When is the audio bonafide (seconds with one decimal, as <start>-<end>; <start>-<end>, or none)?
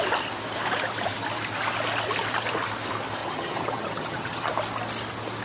0.0-3.2; 4.5-5.4